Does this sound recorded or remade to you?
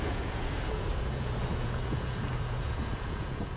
remade